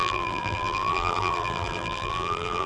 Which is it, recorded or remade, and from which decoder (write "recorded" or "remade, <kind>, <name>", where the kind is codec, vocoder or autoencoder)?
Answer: remade, vocoder, BigVGAN v2